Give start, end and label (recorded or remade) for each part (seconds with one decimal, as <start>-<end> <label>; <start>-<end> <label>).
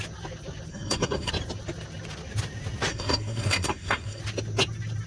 0.0-0.7 recorded; 0.7-1.3 remade; 1.3-2.9 recorded; 2.9-4.2 remade; 4.2-5.1 recorded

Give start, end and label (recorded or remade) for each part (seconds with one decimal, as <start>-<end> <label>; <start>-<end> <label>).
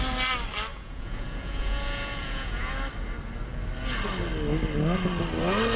0.0-0.7 recorded; 0.7-2.7 remade; 2.7-5.8 recorded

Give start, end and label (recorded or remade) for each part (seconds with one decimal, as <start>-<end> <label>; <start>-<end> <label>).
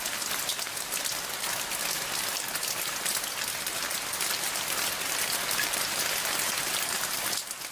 0.0-7.7 recorded